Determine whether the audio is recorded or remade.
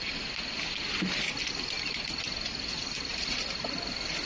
recorded